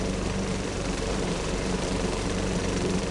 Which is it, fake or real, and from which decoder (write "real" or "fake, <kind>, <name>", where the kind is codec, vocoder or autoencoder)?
fake, vocoder, BigVGAN v2